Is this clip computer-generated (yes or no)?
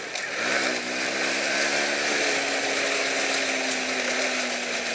no